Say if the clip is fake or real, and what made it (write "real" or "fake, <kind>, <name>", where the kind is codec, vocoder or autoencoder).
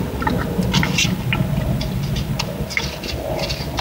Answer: real